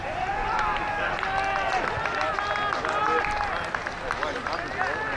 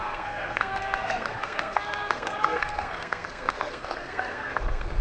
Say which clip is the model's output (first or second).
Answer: second